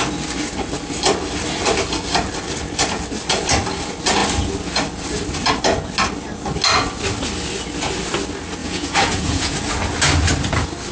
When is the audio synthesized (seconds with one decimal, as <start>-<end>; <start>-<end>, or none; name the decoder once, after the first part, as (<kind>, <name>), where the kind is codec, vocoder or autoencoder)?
8.6-9.5 (vocoder, Vocos)